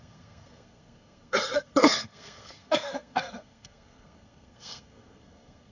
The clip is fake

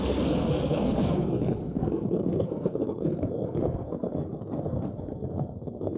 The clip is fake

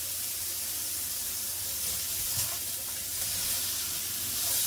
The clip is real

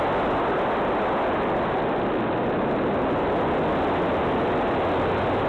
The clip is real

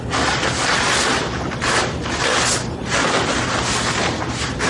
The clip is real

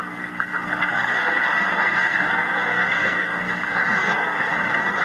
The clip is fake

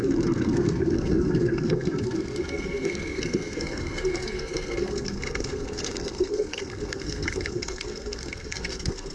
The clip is fake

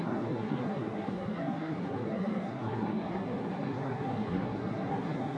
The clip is fake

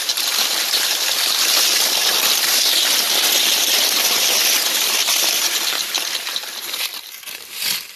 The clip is real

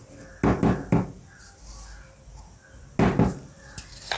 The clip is real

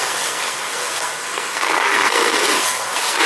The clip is fake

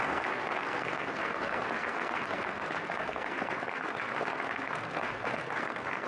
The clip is fake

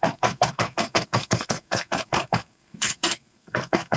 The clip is fake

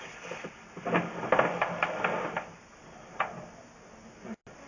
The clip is real